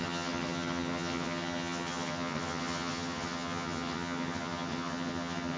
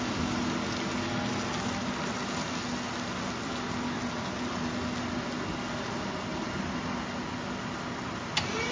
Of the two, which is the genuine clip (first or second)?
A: second